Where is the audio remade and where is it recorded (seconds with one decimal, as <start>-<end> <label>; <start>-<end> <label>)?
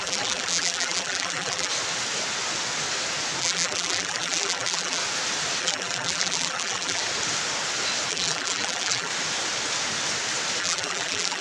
0.0-1.7 remade; 1.7-3.4 recorded; 3.4-5.0 remade; 5.0-5.6 recorded; 5.6-7.0 remade; 7.0-8.1 recorded; 8.1-9.1 remade; 9.1-10.6 recorded; 10.6-11.4 remade